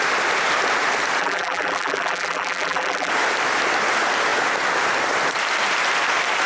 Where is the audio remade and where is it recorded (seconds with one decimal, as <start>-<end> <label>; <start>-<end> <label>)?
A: 0.0-1.2 recorded; 1.2-3.1 remade; 3.1-6.5 recorded